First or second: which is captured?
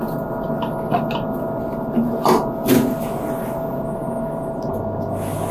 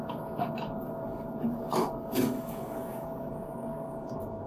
first